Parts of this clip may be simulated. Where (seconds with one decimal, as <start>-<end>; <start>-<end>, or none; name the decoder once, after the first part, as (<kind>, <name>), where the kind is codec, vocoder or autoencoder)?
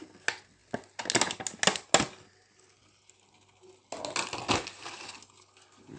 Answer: none